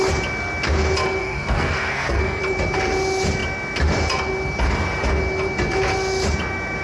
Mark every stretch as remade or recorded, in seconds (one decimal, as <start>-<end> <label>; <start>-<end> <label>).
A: 0.0-1.2 recorded; 1.2-2.4 remade; 2.4-6.8 recorded